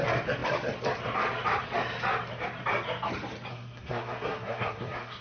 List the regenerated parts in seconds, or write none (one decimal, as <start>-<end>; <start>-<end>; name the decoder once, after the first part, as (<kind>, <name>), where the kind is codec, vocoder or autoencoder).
3.5-5.2 (codec, SNAC)